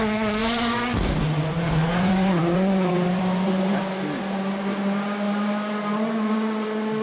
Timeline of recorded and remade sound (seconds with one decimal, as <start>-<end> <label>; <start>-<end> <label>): 0.0-0.4 recorded; 0.4-3.8 remade; 3.8-7.0 recorded